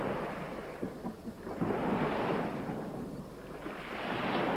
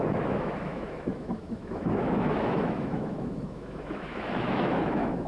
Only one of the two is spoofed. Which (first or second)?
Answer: second